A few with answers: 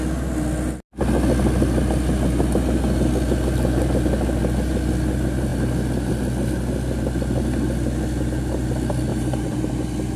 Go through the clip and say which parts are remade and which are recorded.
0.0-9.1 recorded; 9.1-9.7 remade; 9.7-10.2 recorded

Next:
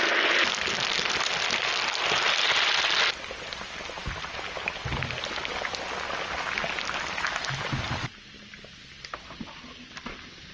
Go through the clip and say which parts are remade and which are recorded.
0.0-10.5 recorded

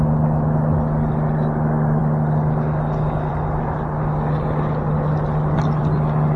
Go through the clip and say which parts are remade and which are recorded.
0.0-6.4 recorded

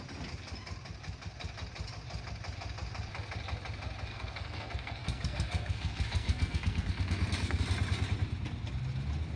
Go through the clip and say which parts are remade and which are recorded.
0.0-4.1 recorded; 4.1-7.6 remade; 7.6-9.4 recorded